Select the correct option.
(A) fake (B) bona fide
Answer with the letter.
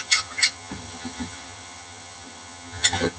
A